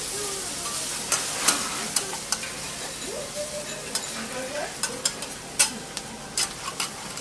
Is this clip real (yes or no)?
no